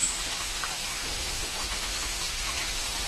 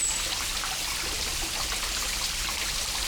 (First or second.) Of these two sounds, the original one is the second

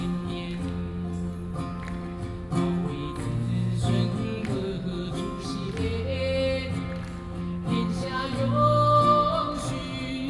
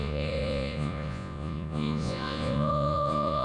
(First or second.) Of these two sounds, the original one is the first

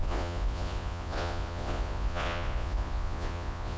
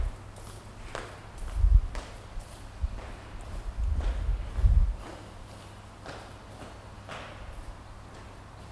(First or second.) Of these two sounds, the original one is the second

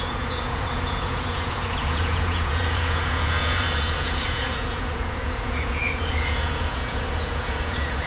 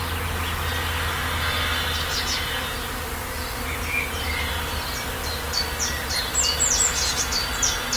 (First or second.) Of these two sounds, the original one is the second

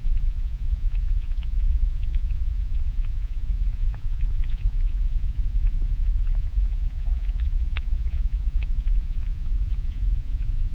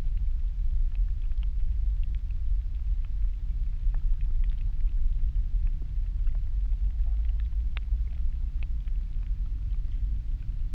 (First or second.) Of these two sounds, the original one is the second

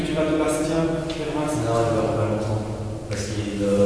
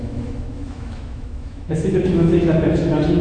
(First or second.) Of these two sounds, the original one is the first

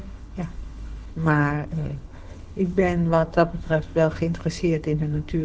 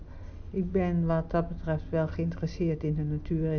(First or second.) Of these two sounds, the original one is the second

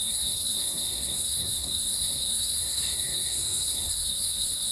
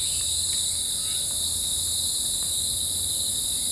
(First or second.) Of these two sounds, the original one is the second